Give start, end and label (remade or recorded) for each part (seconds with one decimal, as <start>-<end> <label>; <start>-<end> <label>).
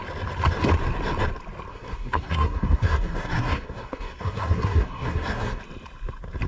0.0-1.7 recorded; 1.7-5.6 remade; 5.6-6.5 recorded